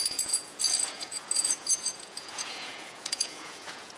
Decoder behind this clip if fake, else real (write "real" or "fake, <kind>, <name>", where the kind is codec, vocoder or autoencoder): fake, vocoder, Vocos